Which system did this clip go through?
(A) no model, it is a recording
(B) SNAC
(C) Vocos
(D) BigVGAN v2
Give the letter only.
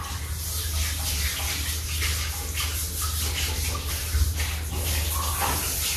A